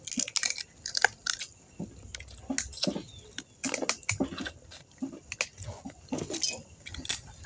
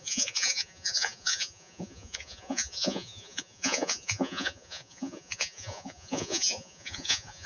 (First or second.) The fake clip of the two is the second